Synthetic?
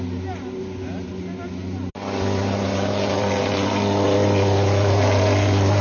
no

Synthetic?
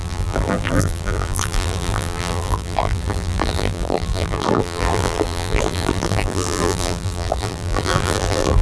yes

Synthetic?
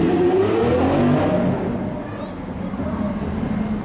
no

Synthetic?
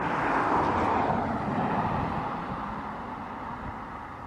no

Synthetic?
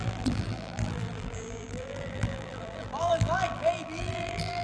yes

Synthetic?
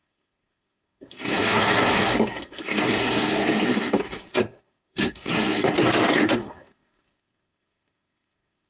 yes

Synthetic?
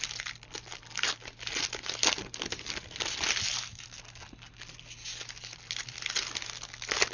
no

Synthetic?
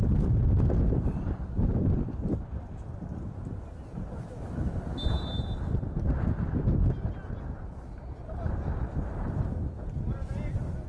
no